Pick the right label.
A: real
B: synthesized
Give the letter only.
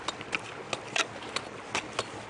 A